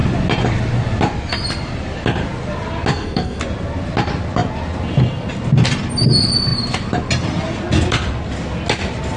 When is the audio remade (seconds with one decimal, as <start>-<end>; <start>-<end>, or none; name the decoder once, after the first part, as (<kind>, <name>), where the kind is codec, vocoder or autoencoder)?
2.9-3.4 (codec, SNAC)